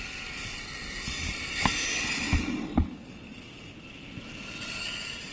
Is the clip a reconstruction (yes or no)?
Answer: no